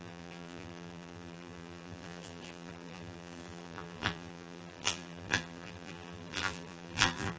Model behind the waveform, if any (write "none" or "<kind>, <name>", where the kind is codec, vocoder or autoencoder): vocoder, BigVGAN v2